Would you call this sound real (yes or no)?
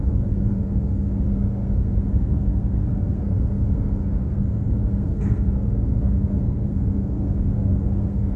no